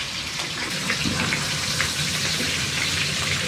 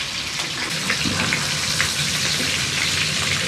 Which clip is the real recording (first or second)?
second